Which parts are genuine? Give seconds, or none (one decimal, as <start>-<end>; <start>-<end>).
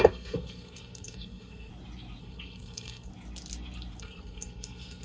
1.7-2.2; 3.1-4.0